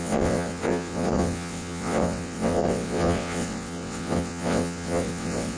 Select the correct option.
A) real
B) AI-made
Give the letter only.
B